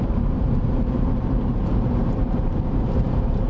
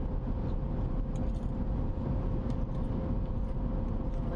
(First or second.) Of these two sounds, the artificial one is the first